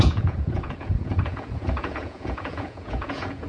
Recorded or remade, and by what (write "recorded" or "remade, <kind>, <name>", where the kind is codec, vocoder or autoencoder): remade, vocoder, Vocos